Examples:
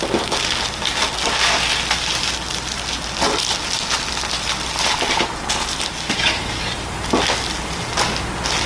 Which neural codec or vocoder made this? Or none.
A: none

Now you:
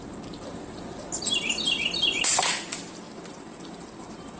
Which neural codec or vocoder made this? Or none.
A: none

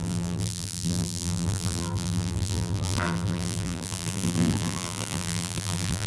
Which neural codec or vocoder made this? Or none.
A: vocoder, BigVGAN v2